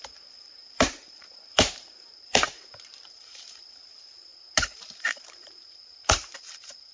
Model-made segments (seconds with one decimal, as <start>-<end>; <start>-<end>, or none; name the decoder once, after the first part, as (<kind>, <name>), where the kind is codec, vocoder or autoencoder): 0.0-6.9 (vocoder, BigVGAN v2)

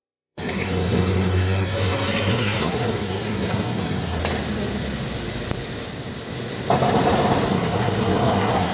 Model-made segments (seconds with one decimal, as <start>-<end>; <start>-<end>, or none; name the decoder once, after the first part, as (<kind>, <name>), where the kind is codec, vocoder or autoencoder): 0.0-4.2 (codec, SNAC); 7.5-8.7

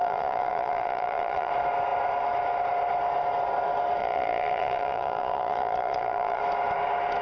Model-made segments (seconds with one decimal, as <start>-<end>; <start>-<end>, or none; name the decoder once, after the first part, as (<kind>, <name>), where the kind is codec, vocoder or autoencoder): 0.0-1.5 (vocoder, Vocos); 4.0-6.4

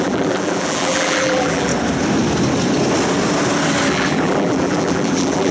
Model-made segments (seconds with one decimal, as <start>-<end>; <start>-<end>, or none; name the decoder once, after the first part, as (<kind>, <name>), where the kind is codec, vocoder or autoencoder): 0.0-1.7 (vocoder, BigVGAN v2); 3.9-5.5

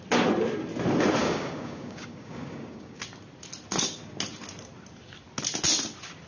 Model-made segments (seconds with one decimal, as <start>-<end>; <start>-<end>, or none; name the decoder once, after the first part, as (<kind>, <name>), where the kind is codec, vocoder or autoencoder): 1.2-3.0 (codec, DAC)